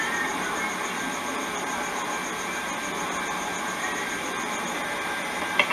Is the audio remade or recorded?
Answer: recorded